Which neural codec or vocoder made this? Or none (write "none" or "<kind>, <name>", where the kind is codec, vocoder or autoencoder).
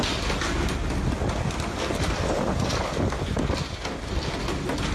none